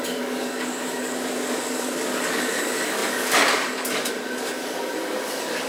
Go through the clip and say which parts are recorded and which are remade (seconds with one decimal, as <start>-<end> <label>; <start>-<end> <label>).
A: 0.0-5.7 remade